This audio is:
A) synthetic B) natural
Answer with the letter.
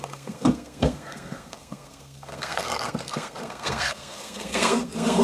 A